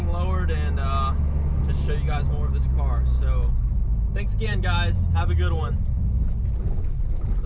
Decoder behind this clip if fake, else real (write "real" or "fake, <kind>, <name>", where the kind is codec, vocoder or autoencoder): real